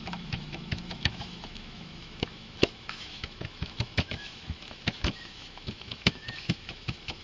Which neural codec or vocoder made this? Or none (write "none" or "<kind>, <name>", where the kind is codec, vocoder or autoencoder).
autoencoder, DAC-VAE